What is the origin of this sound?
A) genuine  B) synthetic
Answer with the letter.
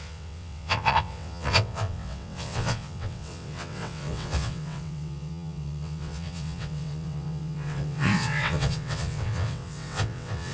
B